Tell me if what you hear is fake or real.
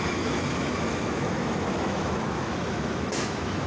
fake